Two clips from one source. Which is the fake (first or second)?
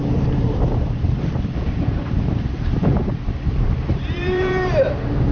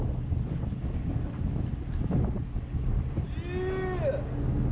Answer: first